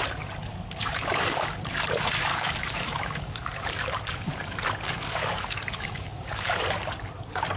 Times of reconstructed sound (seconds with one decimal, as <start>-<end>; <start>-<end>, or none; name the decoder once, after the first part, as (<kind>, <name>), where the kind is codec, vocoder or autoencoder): 0.5-1.6 (codec, DAC); 2.3-6.6